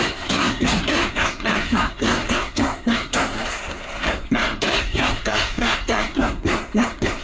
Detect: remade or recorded remade